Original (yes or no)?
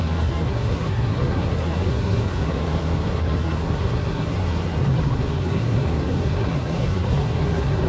no